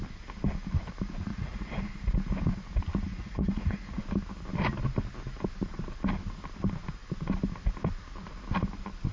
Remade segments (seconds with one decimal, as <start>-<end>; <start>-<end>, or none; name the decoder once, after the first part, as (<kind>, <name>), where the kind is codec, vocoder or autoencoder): 1.3-2.0 (vocoder, Vocos); 3.1-4.0